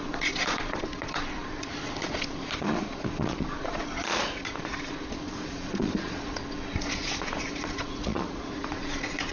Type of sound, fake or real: fake